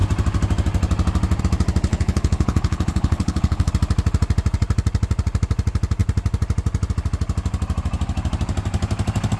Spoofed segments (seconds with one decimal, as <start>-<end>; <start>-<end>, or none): 1.9-3.7